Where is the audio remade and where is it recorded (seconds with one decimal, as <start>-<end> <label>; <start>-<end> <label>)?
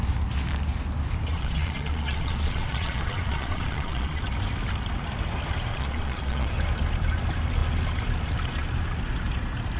0.0-1.3 recorded; 1.3-4.2 remade; 4.2-5.7 recorded; 5.7-6.5 remade; 6.5-9.8 recorded